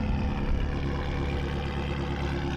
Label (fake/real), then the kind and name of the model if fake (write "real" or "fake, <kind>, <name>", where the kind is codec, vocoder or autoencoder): real